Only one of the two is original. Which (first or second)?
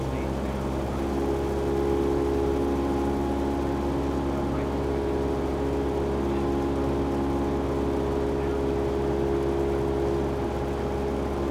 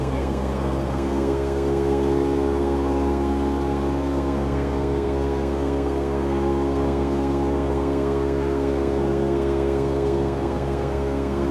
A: first